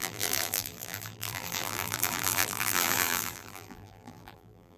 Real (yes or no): no